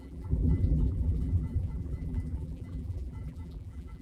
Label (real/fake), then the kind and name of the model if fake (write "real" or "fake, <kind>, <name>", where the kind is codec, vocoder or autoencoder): fake, vocoder, BigVGAN v2